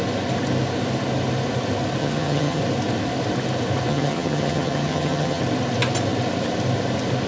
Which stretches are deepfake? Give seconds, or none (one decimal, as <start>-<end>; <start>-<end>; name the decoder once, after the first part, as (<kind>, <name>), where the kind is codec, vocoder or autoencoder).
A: 2.0-2.6 (vocoder, HiFi-GAN); 3.9-5.4